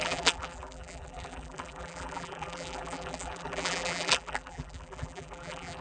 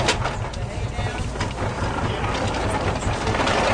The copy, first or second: first